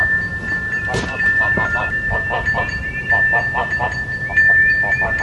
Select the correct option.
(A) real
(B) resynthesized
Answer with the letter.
A